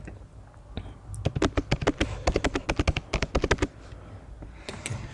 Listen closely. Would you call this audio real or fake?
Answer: real